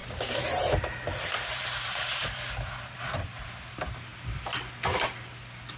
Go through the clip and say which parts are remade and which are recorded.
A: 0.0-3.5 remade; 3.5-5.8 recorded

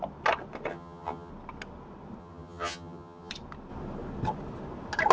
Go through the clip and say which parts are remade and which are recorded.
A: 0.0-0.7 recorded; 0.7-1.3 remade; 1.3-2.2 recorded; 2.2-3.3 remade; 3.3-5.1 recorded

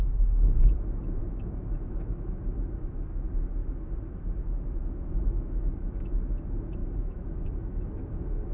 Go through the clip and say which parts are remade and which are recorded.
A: 0.0-1.2 recorded; 1.2-3.2 remade; 3.2-3.6 recorded; 3.6-6.2 remade; 6.2-6.8 recorded; 6.8-7.9 remade; 7.9-8.5 recorded